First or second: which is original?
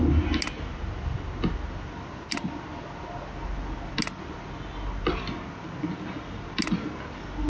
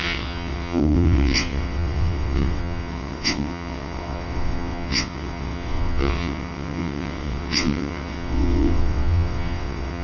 first